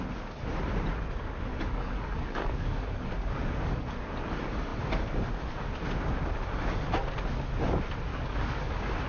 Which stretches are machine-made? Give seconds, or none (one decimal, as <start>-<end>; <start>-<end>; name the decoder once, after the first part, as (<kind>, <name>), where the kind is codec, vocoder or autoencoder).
1.5-3.8 (codec, DAC); 8.1-8.7